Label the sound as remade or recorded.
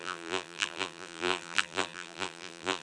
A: remade